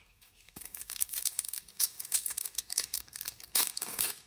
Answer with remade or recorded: remade